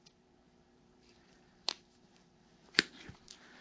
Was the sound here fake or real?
fake